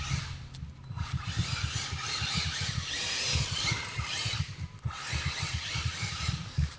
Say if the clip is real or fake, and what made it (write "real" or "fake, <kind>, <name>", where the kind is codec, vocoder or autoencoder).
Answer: real